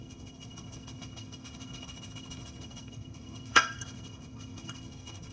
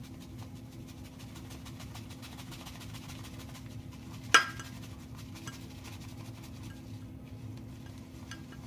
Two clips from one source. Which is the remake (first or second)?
first